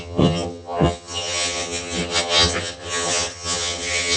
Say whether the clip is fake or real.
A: fake